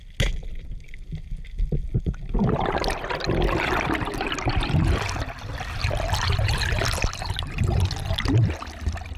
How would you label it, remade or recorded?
recorded